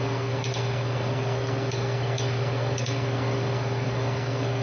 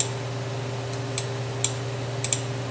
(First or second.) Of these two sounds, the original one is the second